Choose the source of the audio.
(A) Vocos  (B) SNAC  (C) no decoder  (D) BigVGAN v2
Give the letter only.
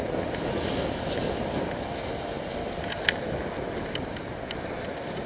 C